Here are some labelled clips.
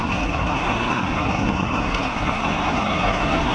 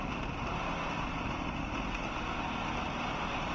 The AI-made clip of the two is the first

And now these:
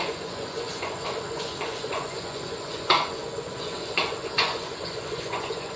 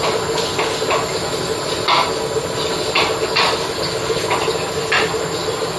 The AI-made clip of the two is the first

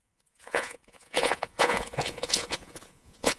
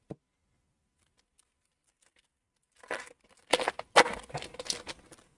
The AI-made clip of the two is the first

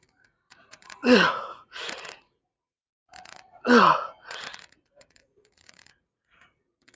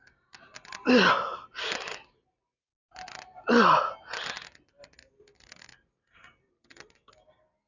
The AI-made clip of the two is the first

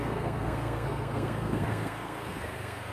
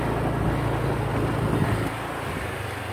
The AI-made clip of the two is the first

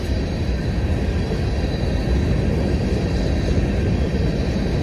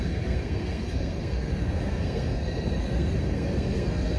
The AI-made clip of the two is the second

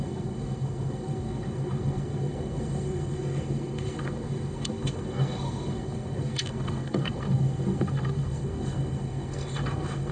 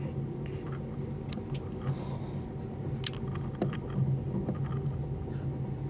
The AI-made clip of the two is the first